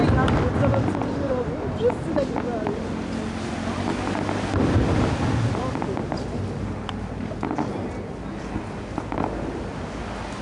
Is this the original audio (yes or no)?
yes